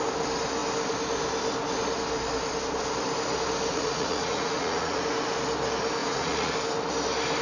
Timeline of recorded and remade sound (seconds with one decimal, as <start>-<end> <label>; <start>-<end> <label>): 0.0-3.7 recorded; 3.7-5.0 remade; 5.0-6.0 recorded; 6.0-6.5 remade; 6.5-7.4 recorded